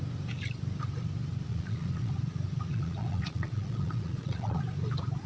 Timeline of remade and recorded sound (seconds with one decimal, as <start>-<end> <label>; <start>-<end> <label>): 0.0-1.5 recorded; 1.5-2.1 remade; 2.1-2.7 recorded; 2.7-4.6 remade; 4.6-5.3 recorded